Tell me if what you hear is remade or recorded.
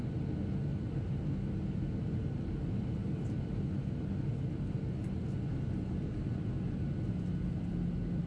recorded